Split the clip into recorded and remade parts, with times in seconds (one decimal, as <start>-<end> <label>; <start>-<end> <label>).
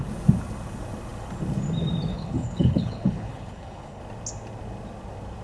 0.0-2.1 recorded; 2.1-4.0 remade; 4.0-5.4 recorded